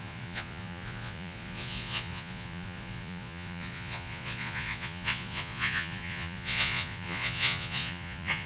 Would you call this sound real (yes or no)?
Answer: no